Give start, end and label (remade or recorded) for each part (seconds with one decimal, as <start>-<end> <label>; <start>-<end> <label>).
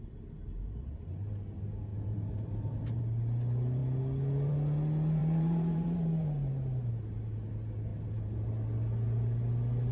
0.0-1.9 recorded; 1.9-3.0 remade; 3.0-5.2 recorded; 5.2-6.9 remade; 6.9-7.9 recorded; 7.9-8.5 remade; 8.5-9.9 recorded